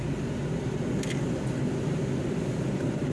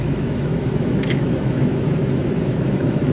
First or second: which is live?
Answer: first